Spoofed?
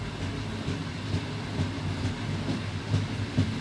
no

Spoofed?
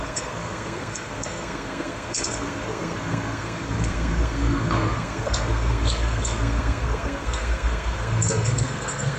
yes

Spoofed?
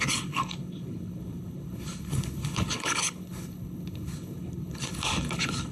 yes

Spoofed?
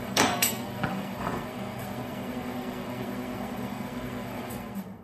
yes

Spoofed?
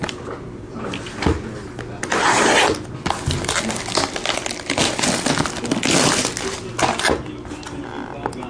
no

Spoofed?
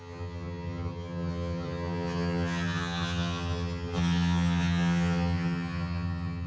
yes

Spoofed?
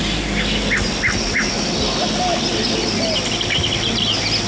no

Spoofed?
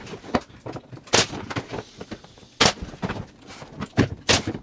no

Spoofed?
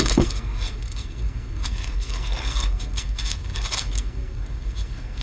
yes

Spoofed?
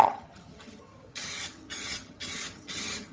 yes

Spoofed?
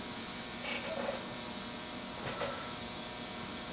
no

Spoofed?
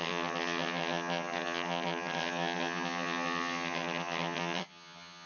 yes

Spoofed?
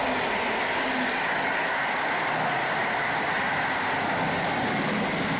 no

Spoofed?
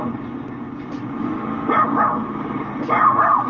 no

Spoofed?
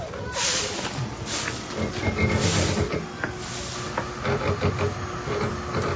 no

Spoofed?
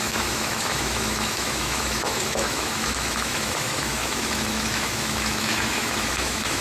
yes